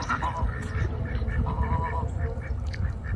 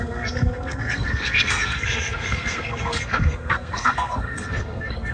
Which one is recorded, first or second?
first